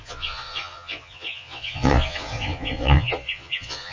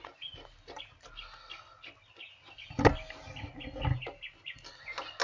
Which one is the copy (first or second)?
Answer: first